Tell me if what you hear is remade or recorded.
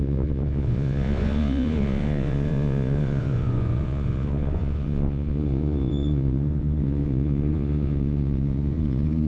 remade